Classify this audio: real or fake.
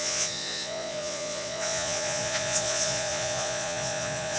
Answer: fake